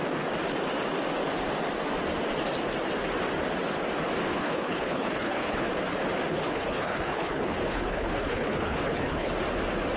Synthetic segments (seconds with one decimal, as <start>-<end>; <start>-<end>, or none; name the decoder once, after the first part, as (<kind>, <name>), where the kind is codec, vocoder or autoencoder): 4.3-5.7 (codec, HILCodec); 6.3-9.3